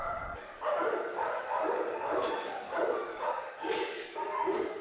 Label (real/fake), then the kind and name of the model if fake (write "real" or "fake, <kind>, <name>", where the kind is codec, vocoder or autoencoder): fake, codec, DAC